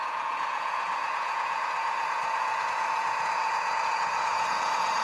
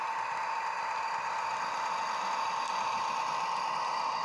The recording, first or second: second